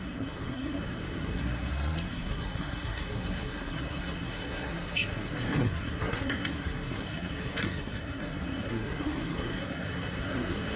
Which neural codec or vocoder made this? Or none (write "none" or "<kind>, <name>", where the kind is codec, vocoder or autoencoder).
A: codec, SNAC